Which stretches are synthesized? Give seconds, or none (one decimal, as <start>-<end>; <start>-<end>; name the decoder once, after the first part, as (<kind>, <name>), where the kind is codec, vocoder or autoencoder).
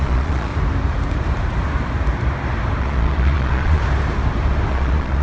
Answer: 0.0-0.5 (vocoder, Vocos); 2.8-3.8; 4.7-5.2